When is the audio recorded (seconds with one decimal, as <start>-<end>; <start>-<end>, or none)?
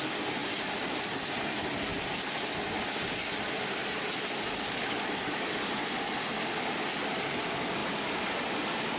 0.0-0.4; 1.6-9.0